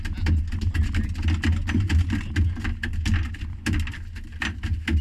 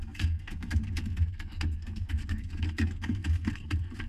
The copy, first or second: second